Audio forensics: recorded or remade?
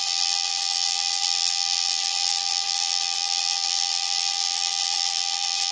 remade